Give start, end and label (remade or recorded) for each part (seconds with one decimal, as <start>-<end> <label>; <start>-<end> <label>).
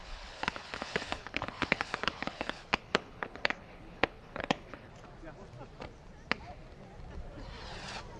0.0-4.9 remade; 4.9-8.2 recorded